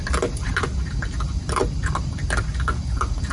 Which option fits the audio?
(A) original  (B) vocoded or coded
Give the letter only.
B